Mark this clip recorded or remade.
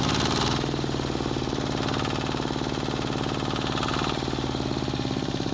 recorded